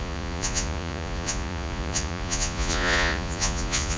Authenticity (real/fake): fake